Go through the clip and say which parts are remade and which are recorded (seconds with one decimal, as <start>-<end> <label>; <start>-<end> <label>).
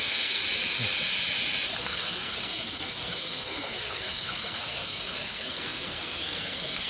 0.0-0.4 remade; 0.4-1.8 recorded; 1.8-6.9 remade